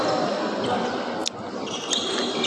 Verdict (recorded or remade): recorded